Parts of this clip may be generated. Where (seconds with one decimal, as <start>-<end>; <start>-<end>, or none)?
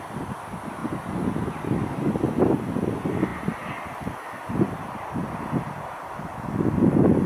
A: none